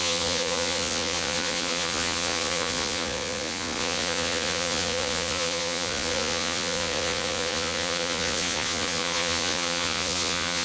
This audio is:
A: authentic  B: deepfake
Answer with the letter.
B